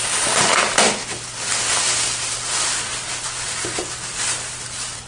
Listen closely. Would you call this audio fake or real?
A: real